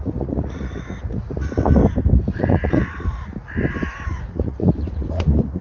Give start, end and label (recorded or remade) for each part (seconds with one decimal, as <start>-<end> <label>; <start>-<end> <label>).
0.0-1.8 remade; 1.8-2.3 recorded; 2.3-3.3 remade; 3.3-4.1 recorded; 4.1-5.6 remade